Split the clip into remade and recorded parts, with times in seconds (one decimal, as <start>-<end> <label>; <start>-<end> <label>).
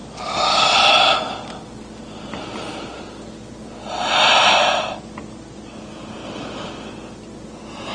0.0-7.9 recorded